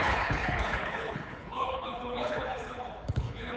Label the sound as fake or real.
fake